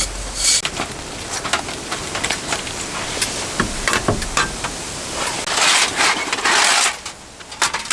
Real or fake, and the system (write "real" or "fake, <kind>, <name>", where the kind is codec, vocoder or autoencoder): real